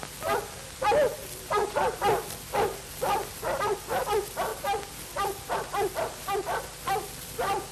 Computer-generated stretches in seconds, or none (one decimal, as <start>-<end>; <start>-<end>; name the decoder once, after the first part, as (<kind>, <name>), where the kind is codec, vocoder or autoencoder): none